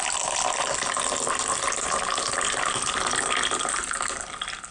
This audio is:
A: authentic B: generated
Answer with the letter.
A